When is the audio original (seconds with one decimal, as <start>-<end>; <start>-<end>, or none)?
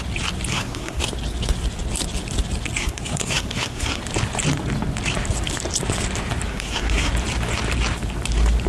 0.0-0.5; 1.0-2.8; 4.0-6.5; 7.1-8.7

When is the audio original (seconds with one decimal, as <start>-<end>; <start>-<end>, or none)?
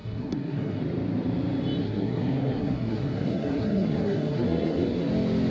0.8-1.8; 5.1-5.5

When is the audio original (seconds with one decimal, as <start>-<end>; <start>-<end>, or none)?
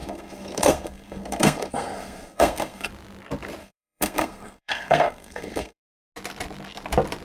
2.9-3.6; 5.8-7.2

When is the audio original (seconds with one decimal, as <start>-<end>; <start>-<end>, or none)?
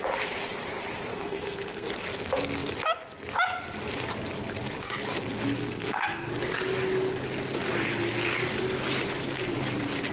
0.0-1.1; 1.9-5.6; 6.3-10.1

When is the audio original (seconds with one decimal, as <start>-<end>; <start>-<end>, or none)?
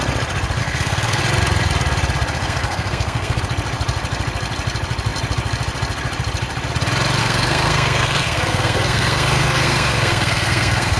0.0-0.6; 1.2-2.4; 3.4-7.2